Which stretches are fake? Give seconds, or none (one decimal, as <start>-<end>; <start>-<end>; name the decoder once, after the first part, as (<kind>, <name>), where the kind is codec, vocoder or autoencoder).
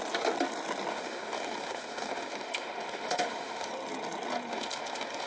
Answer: 0.9-3.7 (autoencoder, DAC-VAE); 4.5-5.3